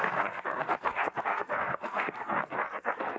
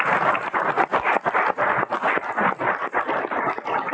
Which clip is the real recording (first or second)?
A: second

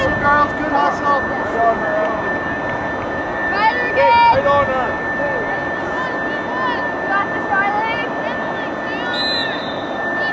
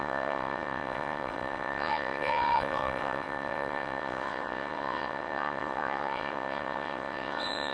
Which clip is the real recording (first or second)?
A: first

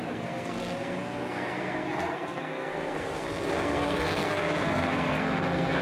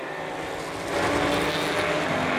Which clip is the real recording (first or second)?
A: second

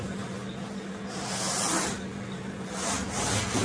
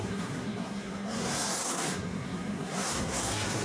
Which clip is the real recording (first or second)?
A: first